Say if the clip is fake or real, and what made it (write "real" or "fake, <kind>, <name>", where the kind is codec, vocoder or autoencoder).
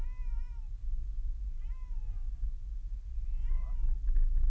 real